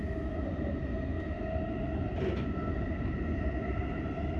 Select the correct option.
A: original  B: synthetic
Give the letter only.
A